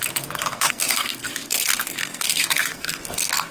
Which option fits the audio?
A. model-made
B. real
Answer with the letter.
A